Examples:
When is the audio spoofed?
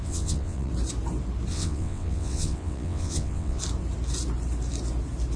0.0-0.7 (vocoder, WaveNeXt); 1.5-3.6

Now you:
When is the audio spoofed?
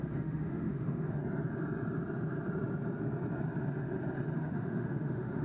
0.0-1.2 (autoencoder, DAC-VAE); 4.4-5.4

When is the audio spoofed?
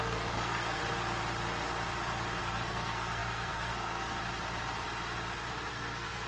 0.0-0.8 (codec, SNAC); 2.4-4.2; 5.7-6.3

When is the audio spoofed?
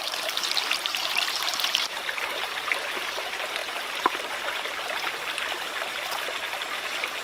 0.0-3.6 (vocoder, BigVGAN v2); 6.8-7.2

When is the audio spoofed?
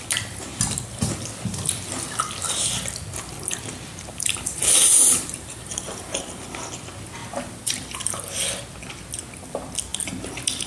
3.9-6.5 (vocoder, BigVGAN v2); 7.2-8.4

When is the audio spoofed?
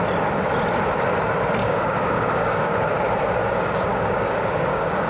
1.6-2.7 (codec, DAC); 3.4-5.1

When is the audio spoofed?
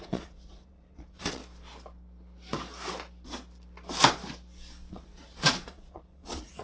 0.0-1.4 (vocoder, Vocos); 4.9-6.6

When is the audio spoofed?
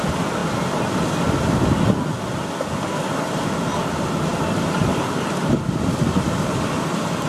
none